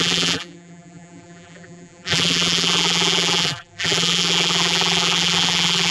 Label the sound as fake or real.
fake